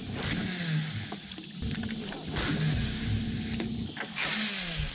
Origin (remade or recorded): recorded